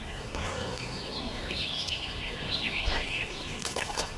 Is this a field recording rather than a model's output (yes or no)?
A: no